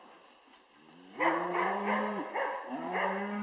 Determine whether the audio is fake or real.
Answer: real